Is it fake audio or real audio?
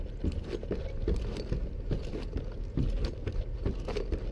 real